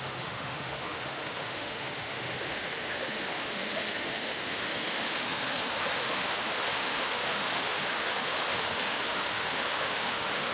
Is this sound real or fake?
fake